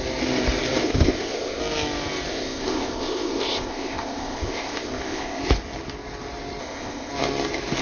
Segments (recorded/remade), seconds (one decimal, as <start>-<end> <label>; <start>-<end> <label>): 0.0-0.8 recorded; 0.8-1.6 remade; 1.6-2.3 recorded; 2.3-5.4 remade; 5.4-6.6 recorded; 6.6-7.1 remade; 7.1-7.8 recorded